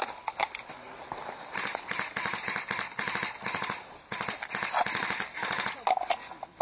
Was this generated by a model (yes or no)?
no